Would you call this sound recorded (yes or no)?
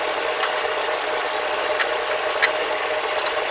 yes